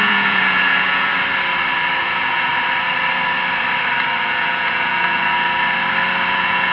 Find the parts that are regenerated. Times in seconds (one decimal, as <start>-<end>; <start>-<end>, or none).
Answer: 0.0-1.1; 2.0-2.5; 4.2-5.2; 6.3-6.7